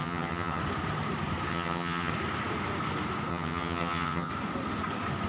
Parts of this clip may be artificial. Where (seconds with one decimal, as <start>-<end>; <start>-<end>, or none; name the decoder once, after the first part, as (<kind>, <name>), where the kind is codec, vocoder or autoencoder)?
0.0-0.6 (vocoder, HiFi-GAN); 1.5-2.1; 3.3-4.3